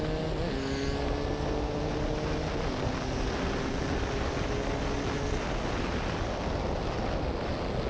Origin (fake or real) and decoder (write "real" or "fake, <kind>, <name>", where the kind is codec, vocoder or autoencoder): real